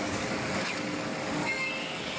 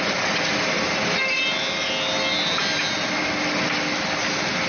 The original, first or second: second